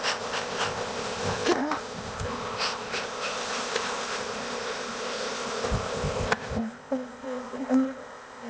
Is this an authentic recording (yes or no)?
no